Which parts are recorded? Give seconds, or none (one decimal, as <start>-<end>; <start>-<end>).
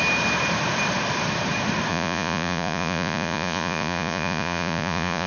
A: 0.0-1.9